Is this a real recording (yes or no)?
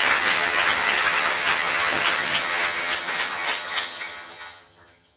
no